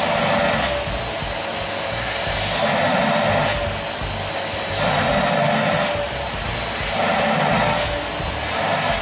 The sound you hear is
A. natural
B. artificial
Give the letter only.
A